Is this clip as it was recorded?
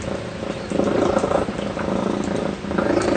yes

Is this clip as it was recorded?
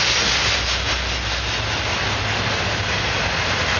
yes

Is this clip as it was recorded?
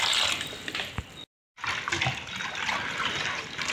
yes